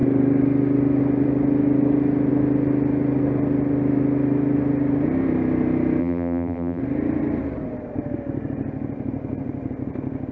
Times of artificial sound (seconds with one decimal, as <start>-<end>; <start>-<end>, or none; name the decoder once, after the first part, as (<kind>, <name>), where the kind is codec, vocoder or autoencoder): 6.0-6.8 (vocoder, BigVGAN v2)